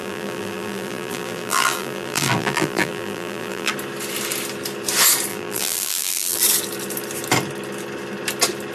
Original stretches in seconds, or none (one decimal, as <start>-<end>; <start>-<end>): 3.7-5.3; 6.4-8.7